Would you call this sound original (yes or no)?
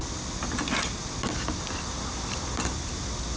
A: yes